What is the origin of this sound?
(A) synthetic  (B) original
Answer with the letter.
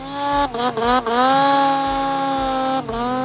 B